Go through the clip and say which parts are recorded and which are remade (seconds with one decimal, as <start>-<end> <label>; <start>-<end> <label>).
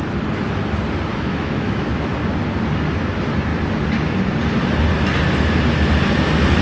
0.0-1.1 recorded; 1.1-1.9 remade; 1.9-6.6 recorded